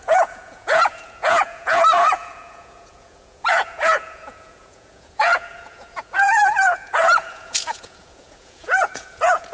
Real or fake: fake